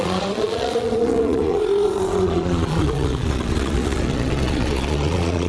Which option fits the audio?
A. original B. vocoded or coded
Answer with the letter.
B